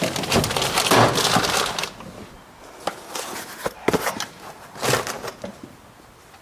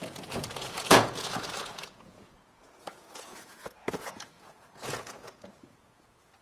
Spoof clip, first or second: second